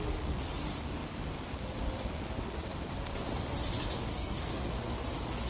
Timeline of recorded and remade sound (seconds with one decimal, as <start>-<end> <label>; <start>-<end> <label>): 0.0-4.1 recorded; 4.1-4.7 remade; 4.7-5.5 recorded